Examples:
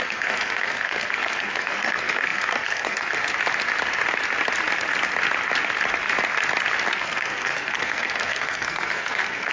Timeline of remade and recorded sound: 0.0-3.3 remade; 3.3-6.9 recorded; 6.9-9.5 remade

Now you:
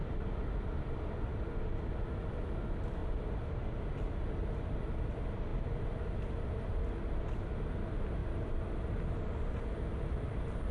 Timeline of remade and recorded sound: 0.0-2.2 remade; 2.2-3.0 recorded; 3.0-4.1 remade; 4.1-5.5 recorded; 5.5-6.8 remade; 6.8-8.2 recorded; 8.2-9.6 remade; 9.6-10.7 recorded

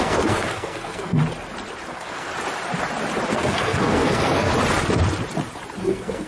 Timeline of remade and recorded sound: 0.0-1.2 remade; 1.2-1.9 recorded; 1.9-2.3 remade; 2.3-3.3 recorded; 3.3-4.5 remade; 4.5-5.8 recorded; 5.8-6.3 remade

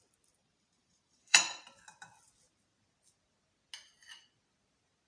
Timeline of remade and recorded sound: 0.0-0.4 recorded; 0.4-1.6 remade; 1.6-5.1 recorded

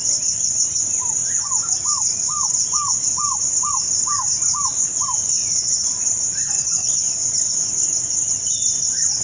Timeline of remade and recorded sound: 0.0-5.4 recorded; 5.4-6.9 remade; 6.9-9.2 recorded

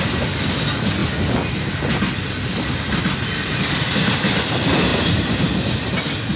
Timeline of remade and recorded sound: 0.0-4.9 recorded; 4.9-5.5 remade; 5.5-6.4 recorded

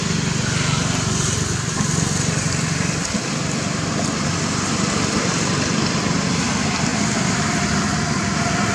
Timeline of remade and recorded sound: 0.0-8.7 recorded

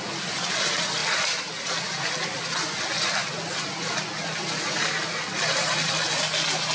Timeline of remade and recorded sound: 0.0-6.7 recorded